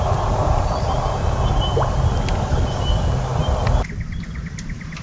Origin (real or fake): real